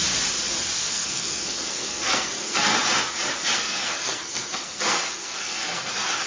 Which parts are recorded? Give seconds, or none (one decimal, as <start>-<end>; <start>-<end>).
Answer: 0.0-0.8; 2.7-3.5